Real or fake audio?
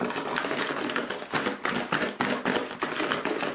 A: real